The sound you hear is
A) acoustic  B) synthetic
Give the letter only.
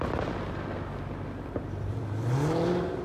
A